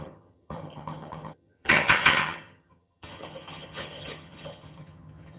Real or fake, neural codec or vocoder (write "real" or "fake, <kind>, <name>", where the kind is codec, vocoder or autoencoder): fake, vocoder, HiFi-GAN